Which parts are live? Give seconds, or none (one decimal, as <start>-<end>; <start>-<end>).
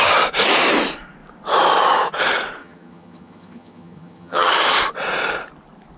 0.0-2.6; 4.5-6.0